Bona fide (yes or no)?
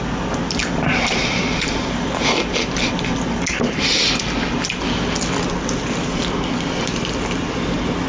yes